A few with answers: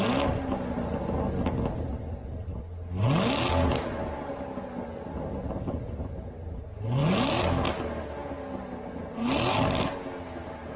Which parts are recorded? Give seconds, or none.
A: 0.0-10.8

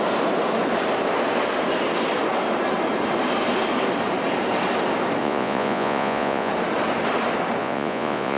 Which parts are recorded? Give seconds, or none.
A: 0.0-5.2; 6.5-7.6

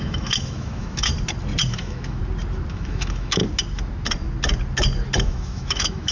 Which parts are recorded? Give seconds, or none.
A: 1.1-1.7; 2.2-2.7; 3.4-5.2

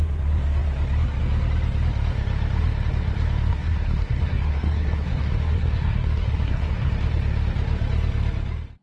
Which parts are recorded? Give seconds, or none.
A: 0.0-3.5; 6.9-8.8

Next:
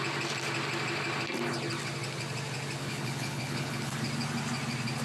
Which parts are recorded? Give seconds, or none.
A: 0.0-2.8; 4.0-5.0

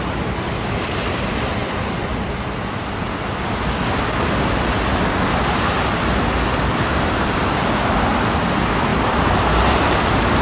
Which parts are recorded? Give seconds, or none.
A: 0.0-10.4